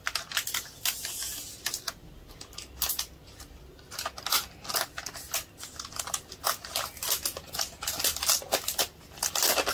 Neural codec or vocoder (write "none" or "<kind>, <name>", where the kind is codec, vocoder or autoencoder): none